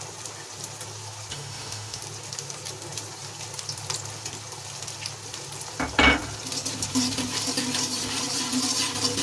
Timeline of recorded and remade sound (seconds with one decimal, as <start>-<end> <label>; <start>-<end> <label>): 0.0-1.3 recorded; 1.3-2.0 remade; 2.0-9.2 recorded